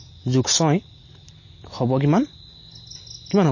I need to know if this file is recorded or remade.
recorded